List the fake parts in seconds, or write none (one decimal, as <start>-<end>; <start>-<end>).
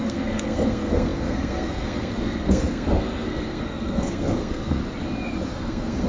0.0-4.8; 5.5-6.1